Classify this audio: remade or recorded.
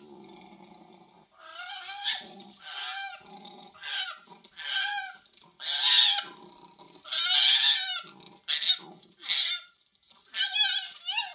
recorded